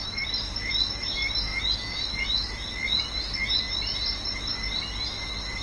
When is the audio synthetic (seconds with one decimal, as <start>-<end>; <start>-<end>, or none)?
0.0-0.7